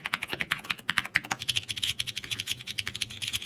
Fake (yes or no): yes